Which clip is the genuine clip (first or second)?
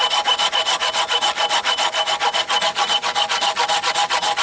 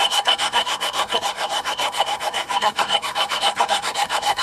first